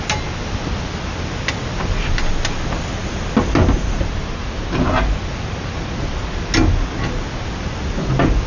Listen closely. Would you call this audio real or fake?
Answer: real